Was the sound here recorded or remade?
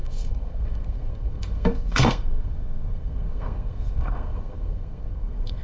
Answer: remade